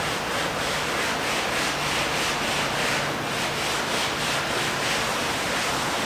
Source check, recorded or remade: recorded